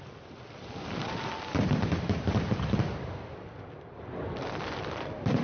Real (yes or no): no